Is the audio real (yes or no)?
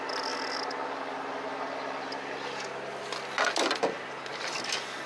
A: yes